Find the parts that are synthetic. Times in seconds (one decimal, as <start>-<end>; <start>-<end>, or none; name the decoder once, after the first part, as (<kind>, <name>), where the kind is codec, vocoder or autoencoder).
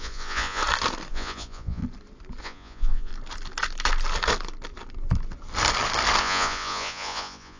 0.0-0.6 (vocoder, Vocos); 1.1-1.8; 2.4-3.1; 6.2-7.6